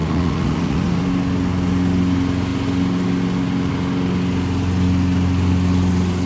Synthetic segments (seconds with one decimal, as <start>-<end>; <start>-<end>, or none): 0.0-1.0